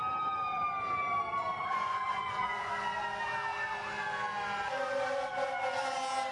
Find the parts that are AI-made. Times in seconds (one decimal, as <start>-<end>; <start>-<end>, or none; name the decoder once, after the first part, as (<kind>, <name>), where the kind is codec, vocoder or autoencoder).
1.6-2.7 (vocoder, Vocos)